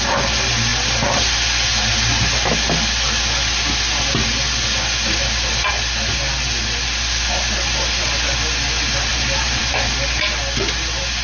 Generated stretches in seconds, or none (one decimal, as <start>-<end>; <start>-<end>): 9.1-9.7